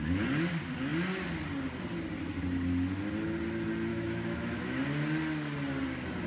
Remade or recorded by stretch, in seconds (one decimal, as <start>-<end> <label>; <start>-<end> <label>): 0.0-3.9 recorded; 3.9-4.8 remade; 4.8-6.3 recorded